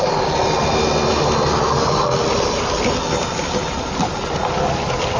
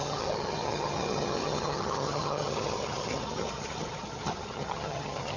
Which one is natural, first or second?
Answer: first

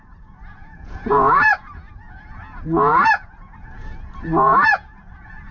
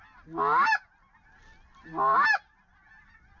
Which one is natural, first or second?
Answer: second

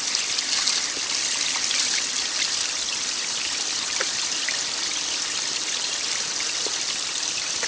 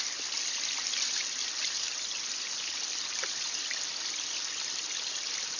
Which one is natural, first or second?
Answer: second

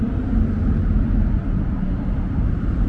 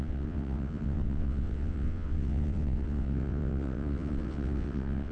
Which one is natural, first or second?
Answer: first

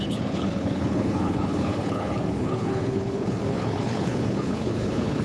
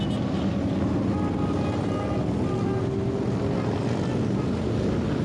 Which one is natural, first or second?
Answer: second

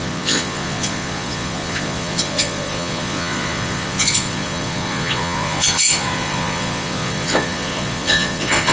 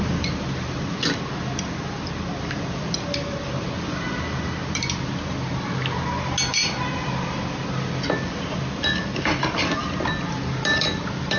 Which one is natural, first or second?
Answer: second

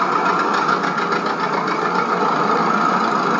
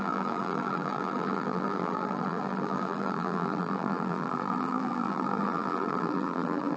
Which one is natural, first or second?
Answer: first